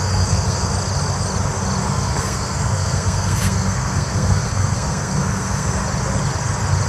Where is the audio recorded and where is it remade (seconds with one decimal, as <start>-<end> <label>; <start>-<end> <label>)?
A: 0.0-0.7 remade; 0.7-1.8 recorded; 1.8-5.8 remade; 5.8-6.9 recorded